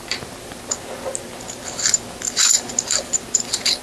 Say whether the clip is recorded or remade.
recorded